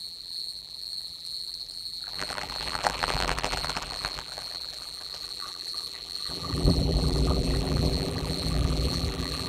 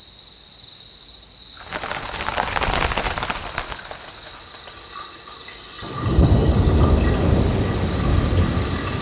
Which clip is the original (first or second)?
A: second